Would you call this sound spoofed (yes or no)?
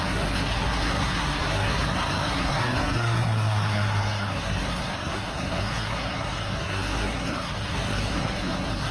yes